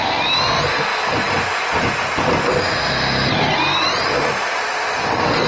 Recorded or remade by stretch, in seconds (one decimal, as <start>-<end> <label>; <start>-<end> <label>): 0.0-5.5 recorded